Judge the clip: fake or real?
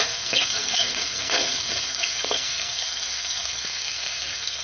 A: fake